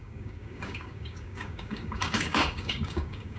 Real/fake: fake